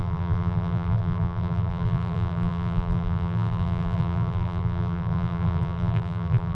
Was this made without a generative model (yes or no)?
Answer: no